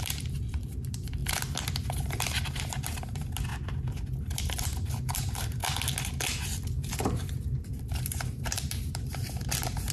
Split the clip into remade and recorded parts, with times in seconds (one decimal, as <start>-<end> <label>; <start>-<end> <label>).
0.0-1.2 remade; 1.2-1.8 recorded; 1.8-3.5 remade; 3.5-4.2 recorded; 4.2-5.6 remade; 5.6-7.0 recorded; 7.0-9.9 remade